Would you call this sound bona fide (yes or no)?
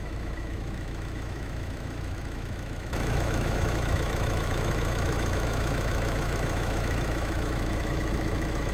no